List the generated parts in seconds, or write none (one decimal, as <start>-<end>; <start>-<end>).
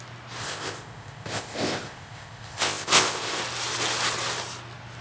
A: 0.4-3.4